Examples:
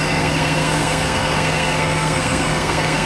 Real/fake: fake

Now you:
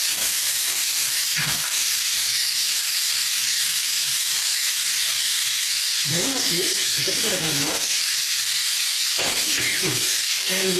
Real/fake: fake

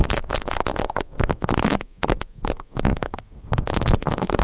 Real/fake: fake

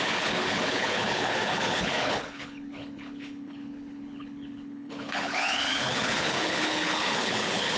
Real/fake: fake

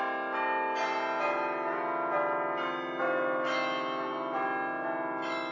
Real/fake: real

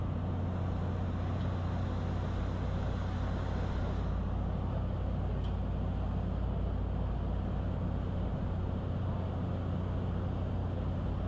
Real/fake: real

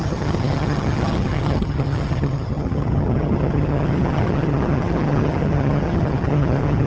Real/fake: fake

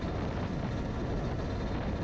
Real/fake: real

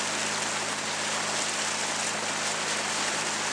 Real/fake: real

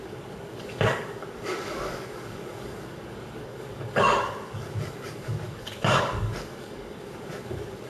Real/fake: fake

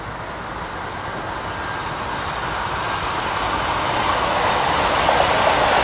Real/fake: real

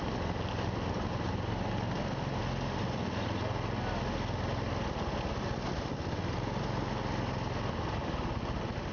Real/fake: real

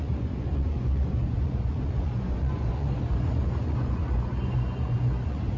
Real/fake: fake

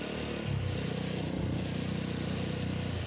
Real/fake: real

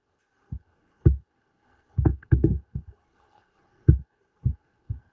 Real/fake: fake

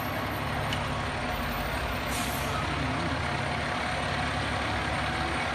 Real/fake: real